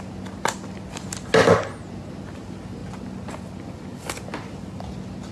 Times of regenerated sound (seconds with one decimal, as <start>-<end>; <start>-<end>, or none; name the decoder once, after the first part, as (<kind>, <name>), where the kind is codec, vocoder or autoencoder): none